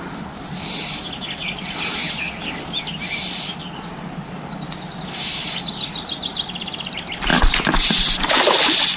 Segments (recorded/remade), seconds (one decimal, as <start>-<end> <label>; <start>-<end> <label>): 0.0-9.0 recorded